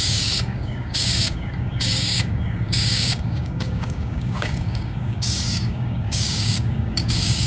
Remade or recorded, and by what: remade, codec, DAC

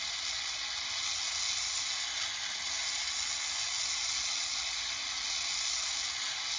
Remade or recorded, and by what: recorded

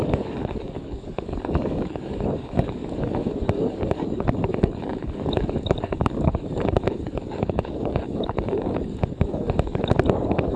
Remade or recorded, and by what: remade, codec, DAC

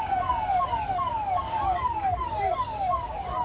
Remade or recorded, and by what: remade, codec, DAC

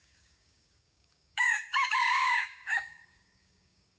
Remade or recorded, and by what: remade, codec, DAC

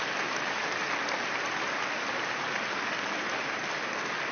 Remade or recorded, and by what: recorded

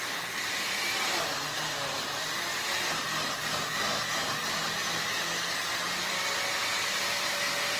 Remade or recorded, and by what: recorded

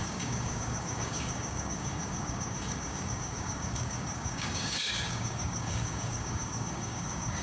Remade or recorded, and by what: remade, codec, DAC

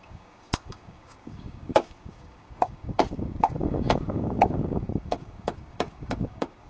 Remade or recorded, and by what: remade, codec, DAC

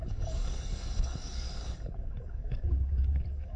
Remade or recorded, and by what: remade, codec, DAC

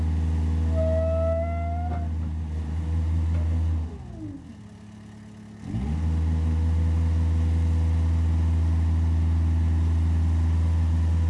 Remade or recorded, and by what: recorded